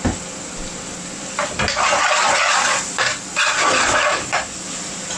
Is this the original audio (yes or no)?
yes